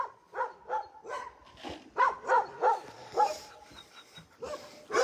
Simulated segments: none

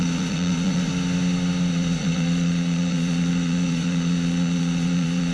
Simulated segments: 0.0-0.9 (vocoder, Vocos); 1.7-5.3

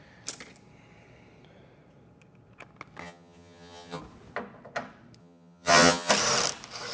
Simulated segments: 3.0-4.0 (vocoder, HiFi-GAN); 5.2-6.1

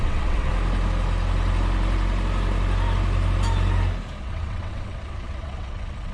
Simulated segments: 0.0-0.5 (vocoder, WaveNeXt); 4.2-6.1

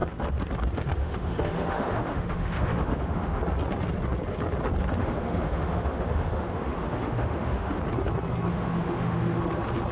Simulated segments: 1.0-3.4 (autoencoder, DAC-VAE); 5.0-7.8; 8.5-9.4